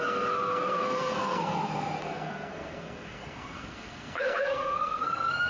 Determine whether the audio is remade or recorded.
remade